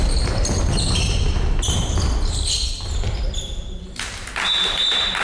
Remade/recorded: recorded